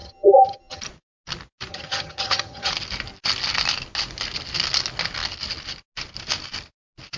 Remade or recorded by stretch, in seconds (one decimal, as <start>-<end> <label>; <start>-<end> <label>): 0.0-0.8 remade; 0.8-1.7 recorded; 1.7-2.7 remade; 2.7-7.2 recorded